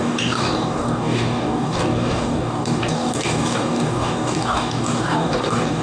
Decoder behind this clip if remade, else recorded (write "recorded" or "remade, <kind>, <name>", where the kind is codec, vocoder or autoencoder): remade, codec, DAC